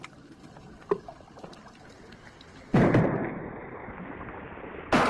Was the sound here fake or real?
real